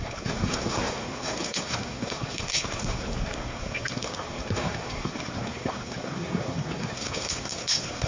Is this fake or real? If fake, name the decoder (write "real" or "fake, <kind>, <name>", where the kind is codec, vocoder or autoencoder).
fake, codec, SNAC